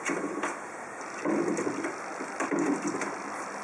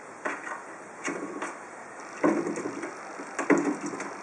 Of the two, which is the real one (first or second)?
second